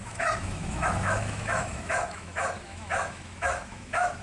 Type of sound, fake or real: fake